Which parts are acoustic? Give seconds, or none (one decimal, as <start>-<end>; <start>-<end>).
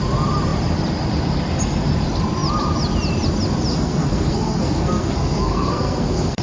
0.0-3.7